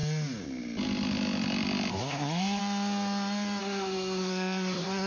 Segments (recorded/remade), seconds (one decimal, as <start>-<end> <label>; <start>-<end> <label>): 0.0-1.9 recorded; 1.9-2.6 remade; 2.6-3.6 recorded; 3.6-5.1 remade